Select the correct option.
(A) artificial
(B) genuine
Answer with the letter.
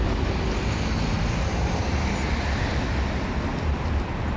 B